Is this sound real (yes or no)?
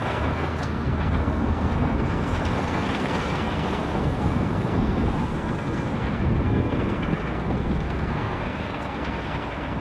no